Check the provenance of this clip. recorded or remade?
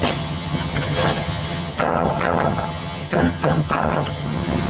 remade